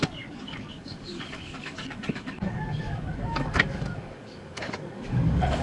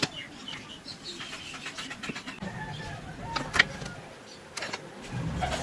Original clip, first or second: second